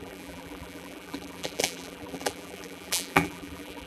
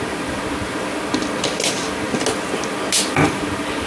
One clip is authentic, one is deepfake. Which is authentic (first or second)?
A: second